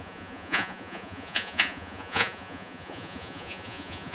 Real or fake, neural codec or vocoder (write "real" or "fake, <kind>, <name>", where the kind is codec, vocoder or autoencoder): fake, vocoder, Vocos